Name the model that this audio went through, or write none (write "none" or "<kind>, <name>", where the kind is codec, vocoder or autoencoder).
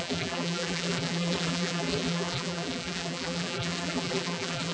vocoder, BigVGAN v2